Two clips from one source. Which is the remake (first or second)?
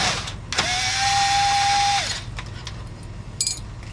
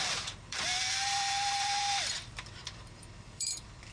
second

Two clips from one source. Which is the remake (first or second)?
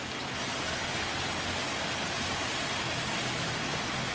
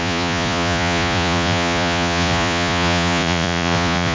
second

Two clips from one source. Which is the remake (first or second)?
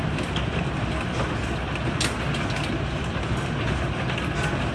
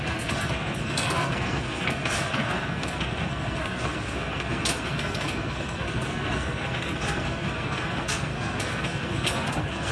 second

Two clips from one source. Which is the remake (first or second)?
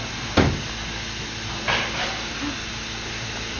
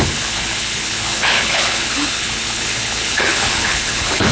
second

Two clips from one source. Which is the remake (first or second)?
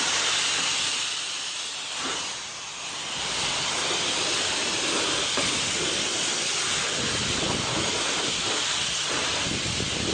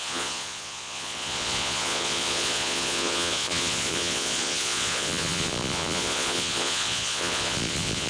second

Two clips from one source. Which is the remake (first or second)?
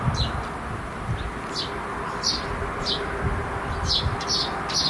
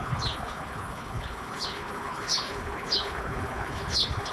second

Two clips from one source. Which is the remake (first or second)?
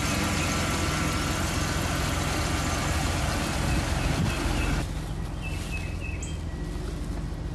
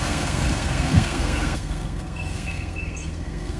second